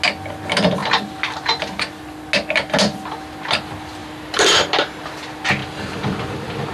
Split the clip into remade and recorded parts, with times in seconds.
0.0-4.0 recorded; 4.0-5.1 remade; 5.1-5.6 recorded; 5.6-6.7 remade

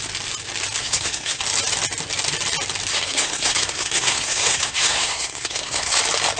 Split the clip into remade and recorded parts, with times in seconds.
0.0-0.8 recorded; 0.8-1.4 remade; 1.4-2.9 recorded; 2.9-6.0 remade; 6.0-6.4 recorded

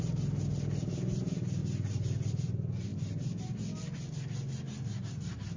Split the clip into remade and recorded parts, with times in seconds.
0.0-5.6 recorded

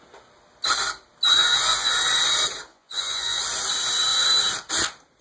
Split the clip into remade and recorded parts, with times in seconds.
0.0-1.4 recorded; 1.4-1.9 remade; 1.9-2.7 recorded; 2.7-3.4 remade; 3.4-5.2 recorded

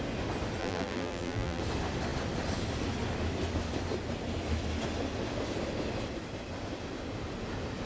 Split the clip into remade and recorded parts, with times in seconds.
0.0-0.6 recorded; 0.6-1.6 remade; 1.6-7.9 recorded

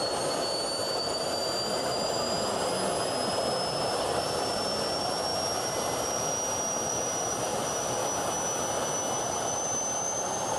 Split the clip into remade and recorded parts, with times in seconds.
0.0-4.2 recorded; 4.2-8.0 remade; 8.0-9.2 recorded; 9.2-10.6 remade